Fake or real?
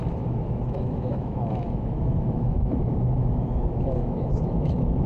fake